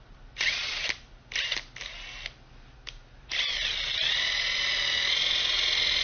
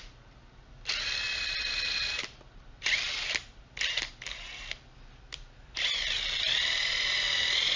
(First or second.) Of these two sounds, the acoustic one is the first